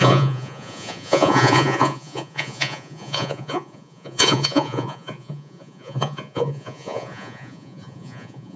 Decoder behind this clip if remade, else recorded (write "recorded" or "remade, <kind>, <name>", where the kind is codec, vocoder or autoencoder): remade, vocoder, Vocos